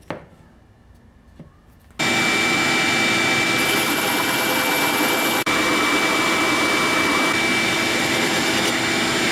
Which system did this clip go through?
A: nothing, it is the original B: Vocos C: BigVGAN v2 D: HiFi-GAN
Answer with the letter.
A